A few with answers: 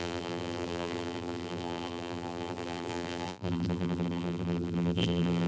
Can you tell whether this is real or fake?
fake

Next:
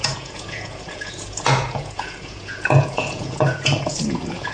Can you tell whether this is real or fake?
fake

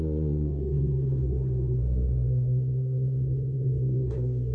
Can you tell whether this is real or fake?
fake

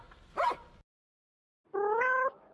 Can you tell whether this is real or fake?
real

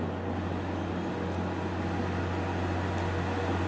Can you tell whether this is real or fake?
real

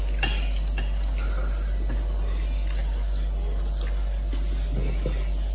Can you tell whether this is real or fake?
real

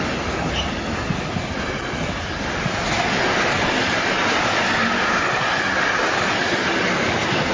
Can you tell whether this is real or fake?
real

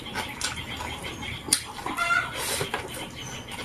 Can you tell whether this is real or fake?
real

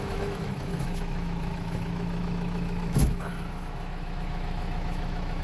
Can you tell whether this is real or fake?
fake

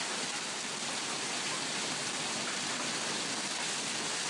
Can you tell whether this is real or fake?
real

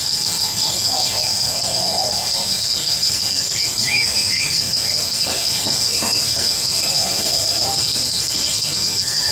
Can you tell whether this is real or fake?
fake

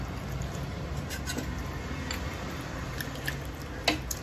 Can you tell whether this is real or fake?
real